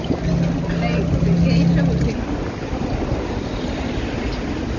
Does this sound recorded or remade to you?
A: recorded